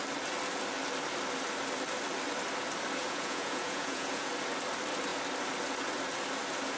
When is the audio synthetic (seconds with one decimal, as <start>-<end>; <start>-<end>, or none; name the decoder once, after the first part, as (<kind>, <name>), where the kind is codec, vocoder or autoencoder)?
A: 3.0-4.3 (vocoder, Vocos)